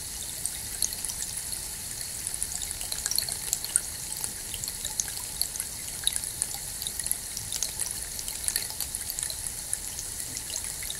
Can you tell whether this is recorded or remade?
recorded